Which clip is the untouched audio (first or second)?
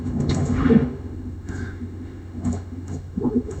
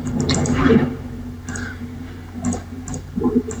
second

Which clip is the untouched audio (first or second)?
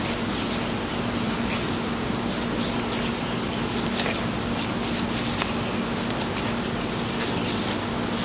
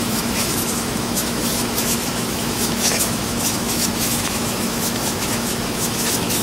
first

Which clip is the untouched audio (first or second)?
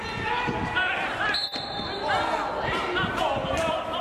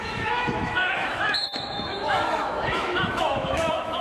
first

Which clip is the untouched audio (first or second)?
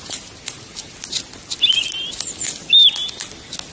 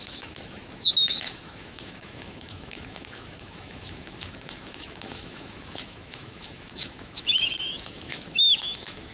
first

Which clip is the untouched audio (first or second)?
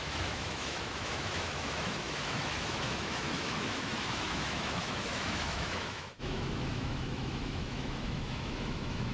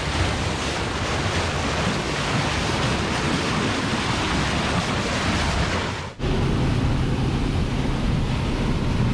second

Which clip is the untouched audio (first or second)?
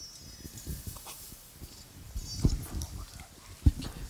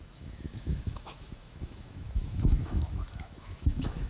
first